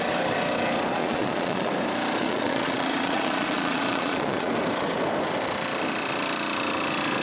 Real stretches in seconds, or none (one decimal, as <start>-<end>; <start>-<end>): 0.0-1.0; 1.7-2.2; 4.5-7.2